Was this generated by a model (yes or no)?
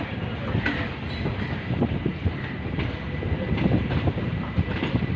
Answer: no